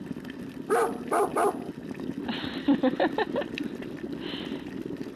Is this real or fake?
real